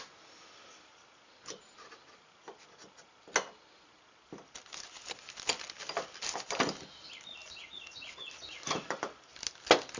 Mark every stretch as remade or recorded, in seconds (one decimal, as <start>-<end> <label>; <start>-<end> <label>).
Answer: 0.0-10.0 recorded